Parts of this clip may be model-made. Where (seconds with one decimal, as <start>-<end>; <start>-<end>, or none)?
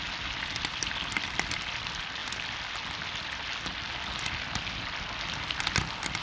none